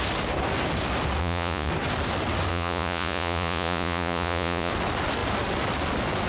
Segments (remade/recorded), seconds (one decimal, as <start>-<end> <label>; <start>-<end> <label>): 0.0-1.2 recorded; 1.2-1.7 remade; 1.7-2.5 recorded; 2.5-4.7 remade; 4.7-6.3 recorded